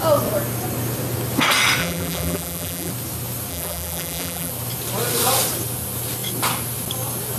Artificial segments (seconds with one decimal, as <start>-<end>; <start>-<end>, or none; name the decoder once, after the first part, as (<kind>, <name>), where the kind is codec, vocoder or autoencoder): 1.8-2.9 (vocoder, BigVGAN v2); 3.5-4.5